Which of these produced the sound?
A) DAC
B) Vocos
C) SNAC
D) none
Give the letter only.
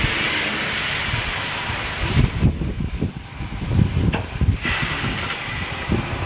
D